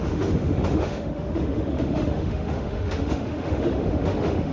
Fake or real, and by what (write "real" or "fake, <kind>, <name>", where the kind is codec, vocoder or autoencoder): fake, autoencoder, DAC-VAE